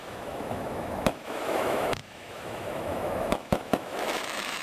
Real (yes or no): no